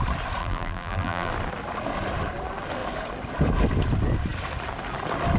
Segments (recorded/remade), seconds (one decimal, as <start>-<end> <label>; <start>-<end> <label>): 0.0-0.4 recorded; 0.4-1.3 remade; 1.3-5.4 recorded

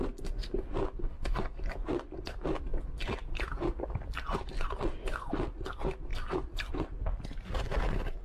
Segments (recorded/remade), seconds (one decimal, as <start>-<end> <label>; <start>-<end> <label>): 0.0-8.2 recorded

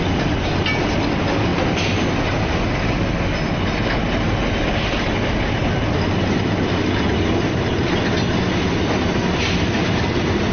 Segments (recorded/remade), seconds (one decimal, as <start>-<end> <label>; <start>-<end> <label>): 0.0-10.5 recorded

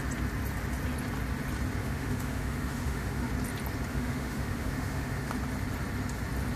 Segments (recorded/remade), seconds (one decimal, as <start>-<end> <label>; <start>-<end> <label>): 0.0-1.8 recorded; 1.8-3.3 remade; 3.3-3.9 recorded; 3.9-5.3 remade; 5.3-6.6 recorded

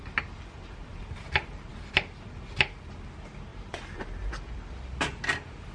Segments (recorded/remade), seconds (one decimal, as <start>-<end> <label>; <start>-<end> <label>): 0.0-0.9 recorded; 0.9-1.7 remade; 1.7-3.5 recorded; 3.5-4.3 remade; 4.3-5.7 recorded

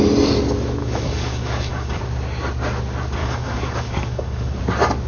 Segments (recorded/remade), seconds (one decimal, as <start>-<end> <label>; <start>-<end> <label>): 0.0-0.8 recorded; 0.8-2.0 remade; 2.0-3.2 recorded; 3.2-4.6 remade; 4.6-5.1 recorded

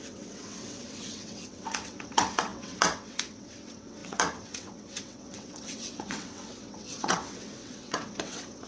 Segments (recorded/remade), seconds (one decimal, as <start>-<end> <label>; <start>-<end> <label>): 0.0-8.7 remade